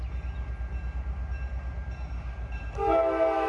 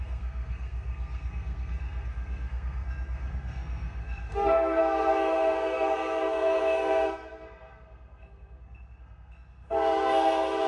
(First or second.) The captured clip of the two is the first